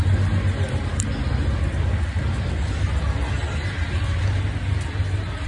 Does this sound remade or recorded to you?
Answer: recorded